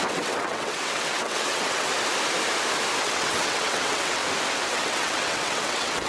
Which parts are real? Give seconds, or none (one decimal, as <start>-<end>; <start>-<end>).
1.9-3.0; 4.2-4.7